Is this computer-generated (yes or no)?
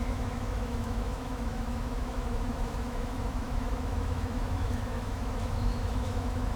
yes